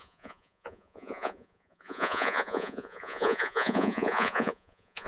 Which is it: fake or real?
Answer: fake